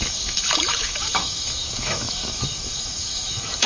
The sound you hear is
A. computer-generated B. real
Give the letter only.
A